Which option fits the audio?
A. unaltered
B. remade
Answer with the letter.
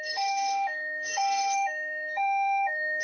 B